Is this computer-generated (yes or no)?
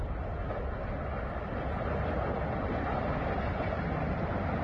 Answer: no